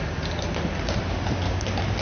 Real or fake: real